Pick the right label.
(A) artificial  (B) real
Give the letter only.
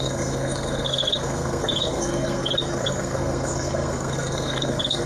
A